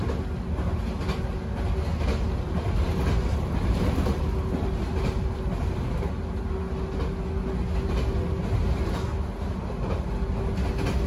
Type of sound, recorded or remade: recorded